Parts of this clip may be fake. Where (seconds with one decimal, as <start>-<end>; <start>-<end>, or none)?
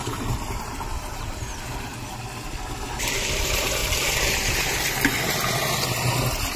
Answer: 0.0-1.9; 3.4-3.8; 5.7-6.6